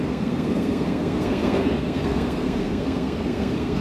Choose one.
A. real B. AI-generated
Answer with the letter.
B